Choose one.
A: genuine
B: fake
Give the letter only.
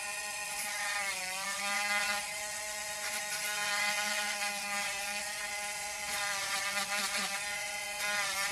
B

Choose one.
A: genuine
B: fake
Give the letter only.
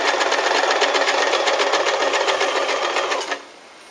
A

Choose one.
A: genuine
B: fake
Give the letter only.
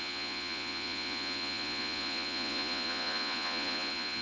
B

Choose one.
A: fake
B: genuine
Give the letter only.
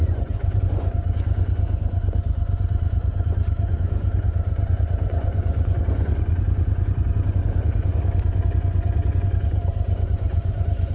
A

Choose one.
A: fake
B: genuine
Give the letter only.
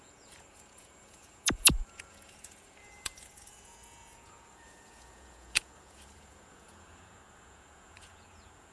A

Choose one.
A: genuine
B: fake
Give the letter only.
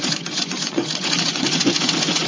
B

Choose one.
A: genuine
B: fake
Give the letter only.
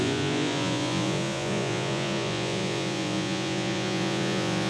B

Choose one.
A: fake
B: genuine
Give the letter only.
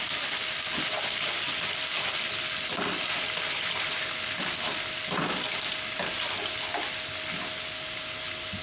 B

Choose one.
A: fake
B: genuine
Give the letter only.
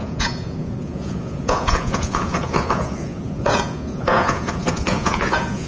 A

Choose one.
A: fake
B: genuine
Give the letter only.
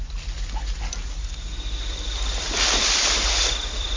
B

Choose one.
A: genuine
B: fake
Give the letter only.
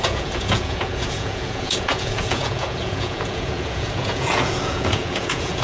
B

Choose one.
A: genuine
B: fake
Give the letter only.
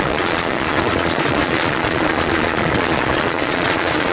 B